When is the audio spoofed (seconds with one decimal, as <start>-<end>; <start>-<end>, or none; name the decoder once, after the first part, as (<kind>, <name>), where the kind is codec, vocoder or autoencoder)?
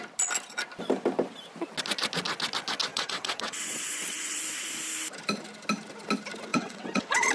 2.9-4.4 (vocoder, WaveNeXt); 6.5-7.3